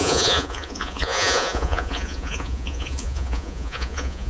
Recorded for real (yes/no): no